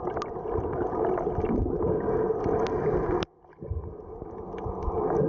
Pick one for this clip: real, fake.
real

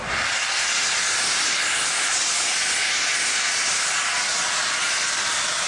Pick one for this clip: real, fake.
real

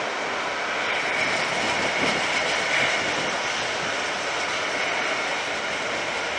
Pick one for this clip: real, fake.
real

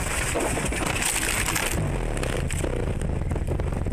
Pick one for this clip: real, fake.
real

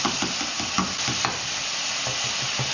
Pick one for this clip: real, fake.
real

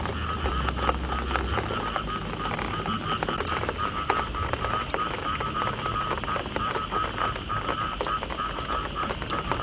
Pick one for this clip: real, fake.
real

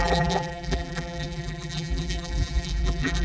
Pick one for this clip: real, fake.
fake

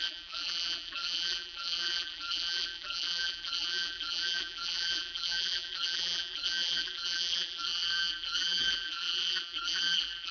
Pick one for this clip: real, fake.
fake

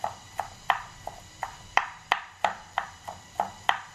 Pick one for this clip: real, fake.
fake